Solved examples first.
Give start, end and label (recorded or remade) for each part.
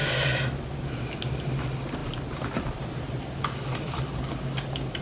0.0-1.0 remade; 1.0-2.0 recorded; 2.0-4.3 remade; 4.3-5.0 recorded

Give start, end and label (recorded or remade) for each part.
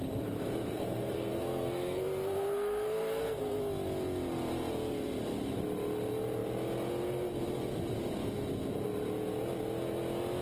0.0-0.7 recorded; 0.7-3.6 remade; 3.6-10.4 recorded